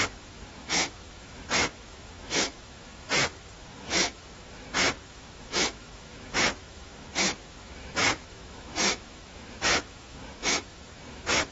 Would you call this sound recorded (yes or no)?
no